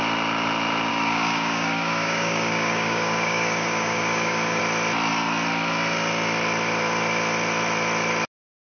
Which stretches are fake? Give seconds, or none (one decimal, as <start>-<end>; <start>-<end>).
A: 0.9-4.6